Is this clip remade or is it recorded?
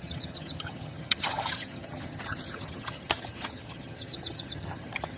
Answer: remade